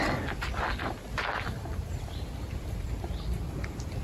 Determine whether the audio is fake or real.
real